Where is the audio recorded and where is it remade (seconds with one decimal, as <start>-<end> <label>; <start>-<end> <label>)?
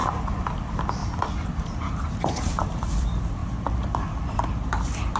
0.0-1.0 remade; 1.0-2.2 recorded; 2.2-5.2 remade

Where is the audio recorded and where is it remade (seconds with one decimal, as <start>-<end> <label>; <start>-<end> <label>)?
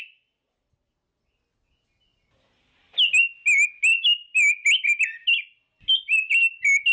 0.0-6.9 recorded